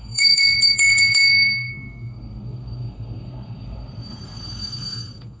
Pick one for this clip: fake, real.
fake